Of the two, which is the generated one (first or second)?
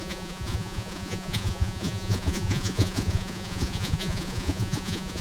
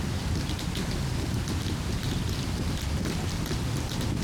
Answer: first